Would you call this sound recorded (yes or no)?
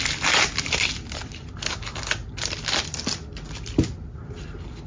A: yes